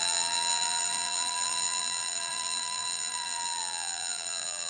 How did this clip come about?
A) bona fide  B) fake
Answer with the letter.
B